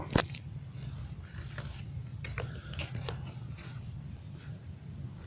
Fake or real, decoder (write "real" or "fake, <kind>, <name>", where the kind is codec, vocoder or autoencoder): real